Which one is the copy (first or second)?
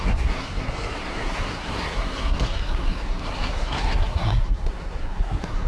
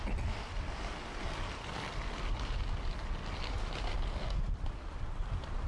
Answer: first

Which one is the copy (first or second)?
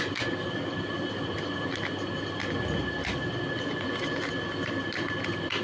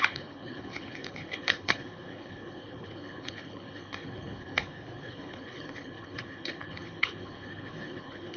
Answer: second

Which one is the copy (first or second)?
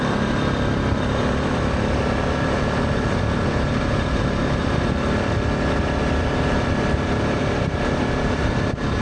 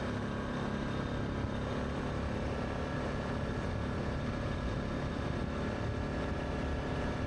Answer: first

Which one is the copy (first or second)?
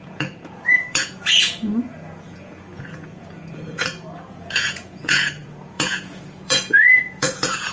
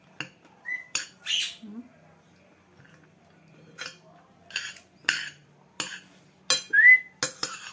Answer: first